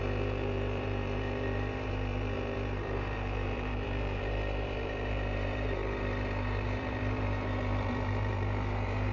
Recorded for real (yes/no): no